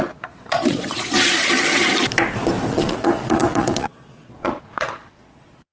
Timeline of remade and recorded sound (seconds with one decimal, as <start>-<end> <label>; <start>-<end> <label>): 0.0-1.1 remade; 1.1-2.7 recorded; 2.7-5.7 remade